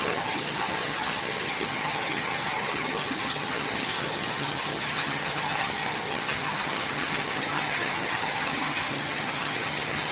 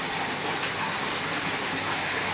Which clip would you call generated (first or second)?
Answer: first